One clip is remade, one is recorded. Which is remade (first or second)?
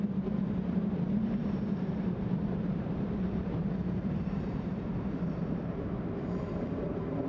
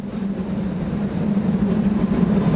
first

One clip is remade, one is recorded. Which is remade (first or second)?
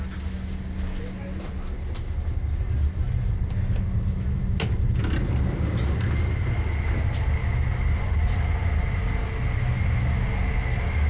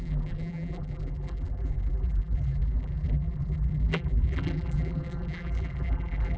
second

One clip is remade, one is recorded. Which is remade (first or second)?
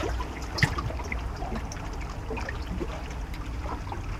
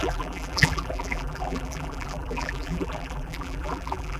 second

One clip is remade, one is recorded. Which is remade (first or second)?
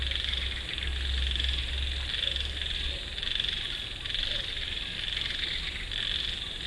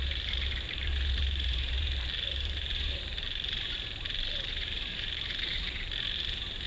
second